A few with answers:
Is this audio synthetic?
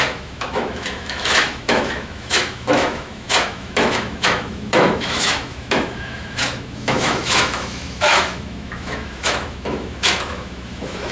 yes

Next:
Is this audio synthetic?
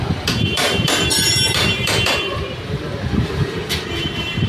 yes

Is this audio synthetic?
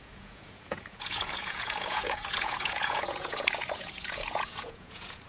yes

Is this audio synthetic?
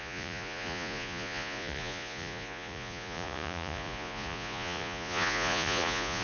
yes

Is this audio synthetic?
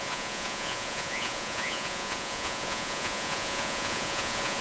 yes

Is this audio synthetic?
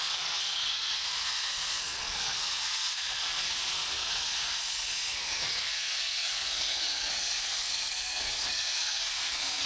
yes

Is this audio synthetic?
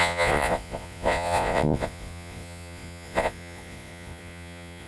yes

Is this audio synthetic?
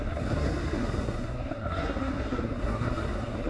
yes